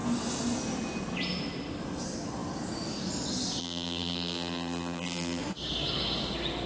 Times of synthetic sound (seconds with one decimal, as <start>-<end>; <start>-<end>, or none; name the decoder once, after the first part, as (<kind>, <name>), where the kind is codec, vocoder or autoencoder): 3.6-5.4 (vocoder, BigVGAN v2)